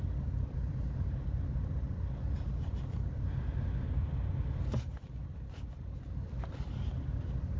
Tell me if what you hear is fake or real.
real